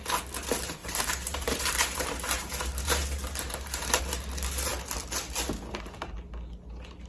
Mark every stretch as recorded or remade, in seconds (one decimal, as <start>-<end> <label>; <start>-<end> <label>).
0.0-0.8 recorded; 0.8-4.0 remade; 4.0-7.1 recorded